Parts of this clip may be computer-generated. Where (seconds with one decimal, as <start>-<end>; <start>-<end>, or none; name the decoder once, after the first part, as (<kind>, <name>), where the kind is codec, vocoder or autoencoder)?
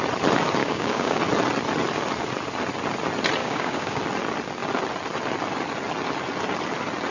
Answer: 0.6-1.2 (codec, DAC); 3.4-4.0